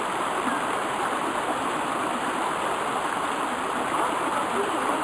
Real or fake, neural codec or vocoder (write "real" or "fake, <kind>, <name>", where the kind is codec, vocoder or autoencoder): fake, vocoder, BigVGAN v2